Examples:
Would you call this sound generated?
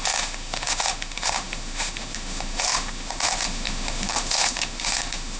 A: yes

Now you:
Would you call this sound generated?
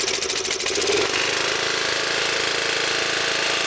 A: no